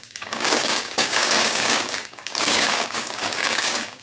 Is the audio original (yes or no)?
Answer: no